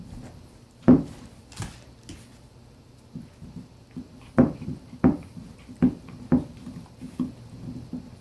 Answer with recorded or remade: recorded